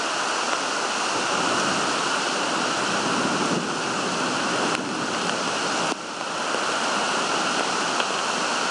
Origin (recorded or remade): recorded